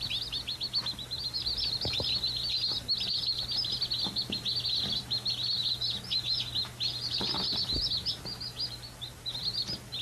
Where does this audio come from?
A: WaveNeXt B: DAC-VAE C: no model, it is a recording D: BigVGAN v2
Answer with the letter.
C